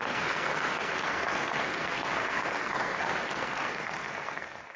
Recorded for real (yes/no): no